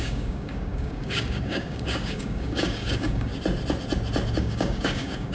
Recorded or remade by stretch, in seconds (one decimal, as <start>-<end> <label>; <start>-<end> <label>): 0.0-3.3 remade; 3.3-4.3 recorded; 4.3-5.3 remade